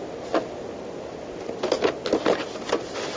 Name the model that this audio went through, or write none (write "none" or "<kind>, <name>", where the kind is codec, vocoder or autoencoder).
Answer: none